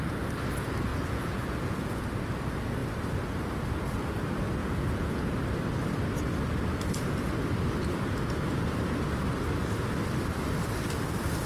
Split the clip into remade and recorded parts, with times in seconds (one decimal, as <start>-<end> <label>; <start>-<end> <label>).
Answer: 0.0-0.9 recorded; 0.9-2.0 remade; 2.0-4.6 recorded; 4.6-5.3 remade; 5.3-11.5 recorded